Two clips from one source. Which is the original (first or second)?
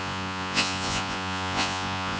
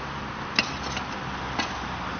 second